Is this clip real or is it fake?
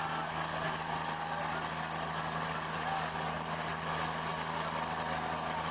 real